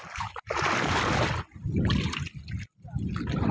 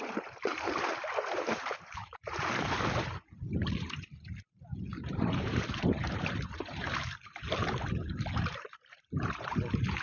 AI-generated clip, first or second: second